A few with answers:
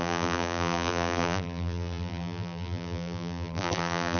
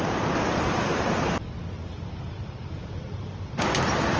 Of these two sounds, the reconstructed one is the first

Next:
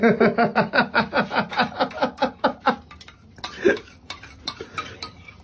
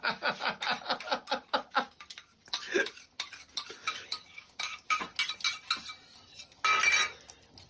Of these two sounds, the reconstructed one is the first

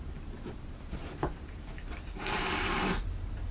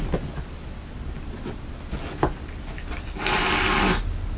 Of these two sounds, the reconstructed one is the first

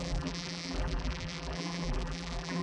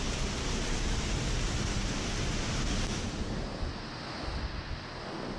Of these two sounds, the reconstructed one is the first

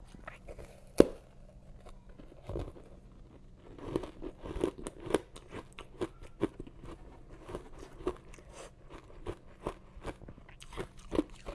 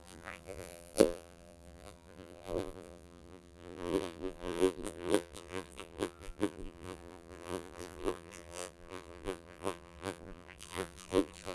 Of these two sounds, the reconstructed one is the second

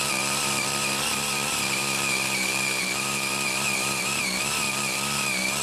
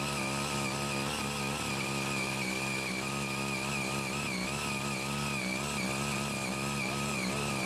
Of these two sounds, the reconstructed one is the first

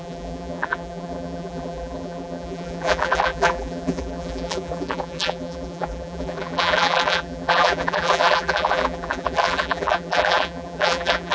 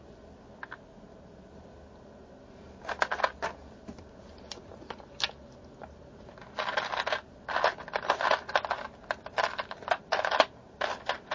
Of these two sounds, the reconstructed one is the first